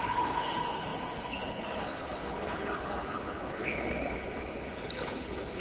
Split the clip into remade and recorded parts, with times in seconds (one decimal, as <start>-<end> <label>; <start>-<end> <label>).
0.0-5.6 remade